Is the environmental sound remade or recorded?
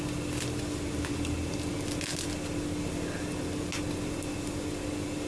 recorded